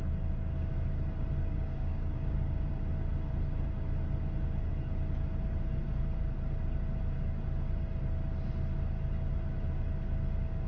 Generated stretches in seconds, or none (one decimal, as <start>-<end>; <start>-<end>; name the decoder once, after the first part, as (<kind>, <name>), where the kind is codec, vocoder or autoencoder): 1.4-2.7 (codec, DAC)